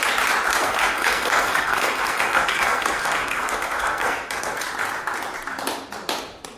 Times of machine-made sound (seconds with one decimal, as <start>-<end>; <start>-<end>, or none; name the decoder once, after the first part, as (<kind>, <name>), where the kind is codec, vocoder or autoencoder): 0.6-4.6 (codec, SNAC)